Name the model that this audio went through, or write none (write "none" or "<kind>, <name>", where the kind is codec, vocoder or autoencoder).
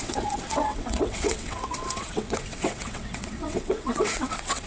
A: vocoder, WaveNeXt